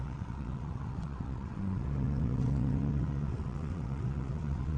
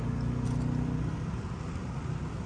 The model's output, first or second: first